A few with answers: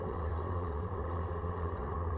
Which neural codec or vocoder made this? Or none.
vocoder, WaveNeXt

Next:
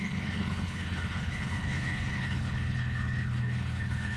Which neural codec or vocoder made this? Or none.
codec, HILCodec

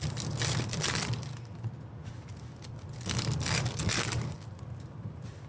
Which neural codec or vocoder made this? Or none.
none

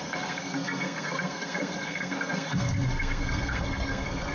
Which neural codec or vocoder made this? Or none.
codec, SNAC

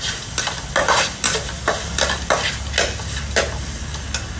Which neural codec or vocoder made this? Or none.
none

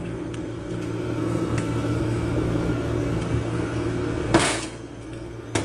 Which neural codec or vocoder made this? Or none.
codec, SNAC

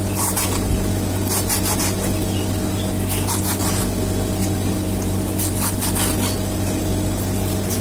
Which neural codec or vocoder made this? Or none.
none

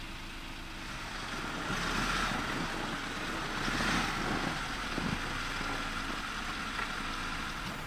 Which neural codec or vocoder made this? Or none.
none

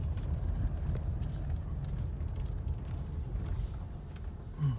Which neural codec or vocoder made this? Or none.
none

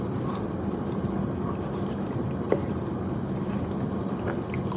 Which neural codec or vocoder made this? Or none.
none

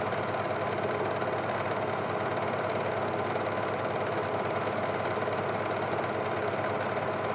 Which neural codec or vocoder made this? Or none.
none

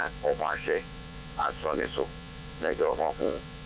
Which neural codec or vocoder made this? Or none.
vocoder, Vocos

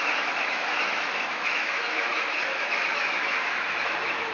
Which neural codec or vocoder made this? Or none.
autoencoder, DAC-VAE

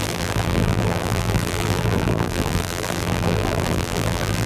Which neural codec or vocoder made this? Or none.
vocoder, BigVGAN v2